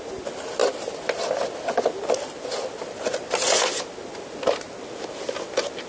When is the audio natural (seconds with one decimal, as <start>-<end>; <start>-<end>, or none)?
0.0-5.9